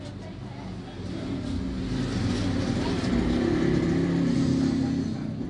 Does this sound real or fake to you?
real